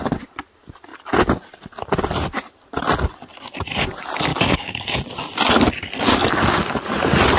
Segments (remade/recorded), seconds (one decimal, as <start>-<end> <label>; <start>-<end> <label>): 0.0-4.3 recorded; 4.3-5.0 remade; 5.0-7.4 recorded